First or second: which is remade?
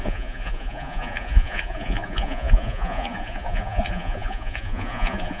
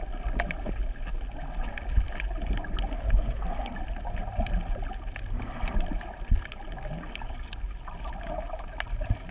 first